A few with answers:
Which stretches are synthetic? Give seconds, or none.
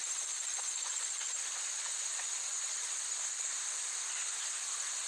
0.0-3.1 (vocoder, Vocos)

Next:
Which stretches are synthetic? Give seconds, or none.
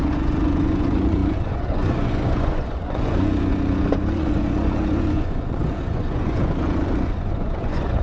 0.0-8.0 (vocoder, Vocos)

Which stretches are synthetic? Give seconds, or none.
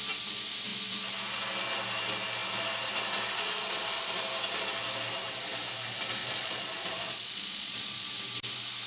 6.2-8.1 (vocoder, Vocos)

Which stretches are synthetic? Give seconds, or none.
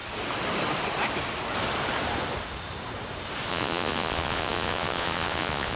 3.5-5.8 (vocoder, Vocos)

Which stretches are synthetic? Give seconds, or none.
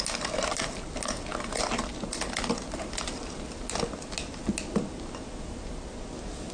none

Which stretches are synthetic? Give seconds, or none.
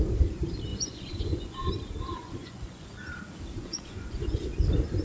0.7-1.7 (vocoder, Vocos); 2.1-3.0; 3.6-4.4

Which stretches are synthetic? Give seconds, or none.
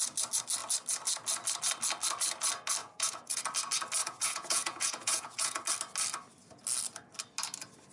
2.8-3.4 (vocoder, Vocos); 4.0-5.6